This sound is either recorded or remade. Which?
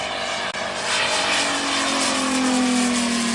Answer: recorded